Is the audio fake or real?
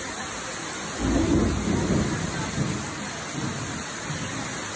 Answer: real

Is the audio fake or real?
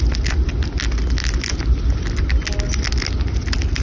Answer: real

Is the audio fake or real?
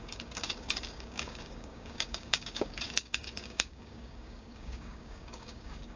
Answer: fake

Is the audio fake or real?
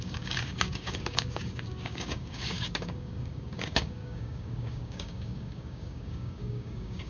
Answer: fake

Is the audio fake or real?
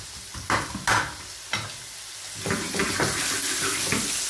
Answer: real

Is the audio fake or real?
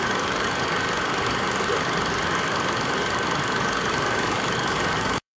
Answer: fake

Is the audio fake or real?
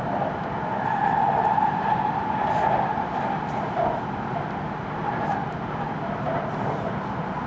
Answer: real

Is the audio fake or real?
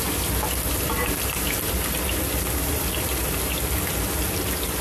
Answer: real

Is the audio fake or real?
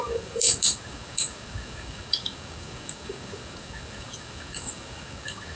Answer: fake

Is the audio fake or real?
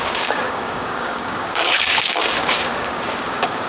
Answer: fake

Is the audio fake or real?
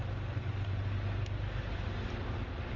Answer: real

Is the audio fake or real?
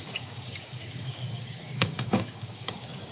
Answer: fake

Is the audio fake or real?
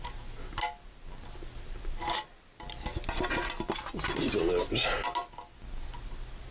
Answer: real